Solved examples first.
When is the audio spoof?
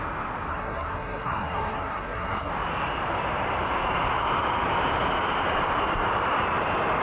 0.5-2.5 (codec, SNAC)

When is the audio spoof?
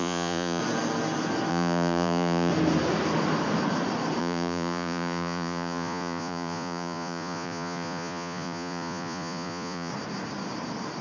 0.0-0.6 (vocoder, Vocos); 1.5-2.5; 4.2-9.9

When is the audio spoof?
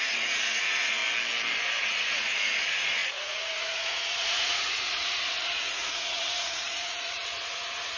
0.0-1.0 (vocoder, Vocos); 1.8-8.0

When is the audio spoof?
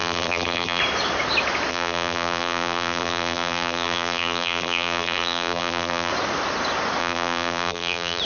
0.0-0.8 (vocoder, BigVGAN v2); 1.7-6.1; 7.0-8.2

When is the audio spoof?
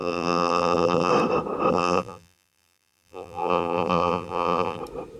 0.0-1.1 (vocoder, BigVGAN v2); 1.7-4.8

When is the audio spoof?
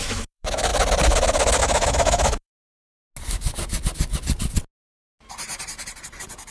0.0-0.7 (autoencoder, DAC-VAE); 1.6-2.5